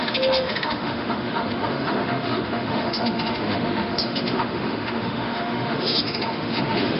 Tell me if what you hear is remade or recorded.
remade